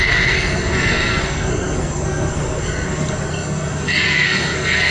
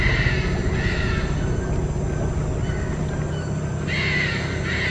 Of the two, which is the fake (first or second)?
first